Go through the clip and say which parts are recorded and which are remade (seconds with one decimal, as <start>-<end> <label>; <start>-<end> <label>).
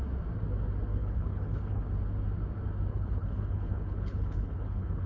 0.0-0.9 recorded; 0.9-1.9 remade; 1.9-2.9 recorded; 2.9-5.1 remade